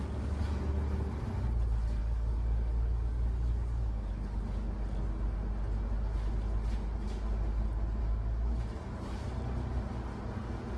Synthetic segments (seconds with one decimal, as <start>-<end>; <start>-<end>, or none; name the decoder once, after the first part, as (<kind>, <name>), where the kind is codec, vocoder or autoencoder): 2.0-4.2 (codec, DAC); 8.0-8.6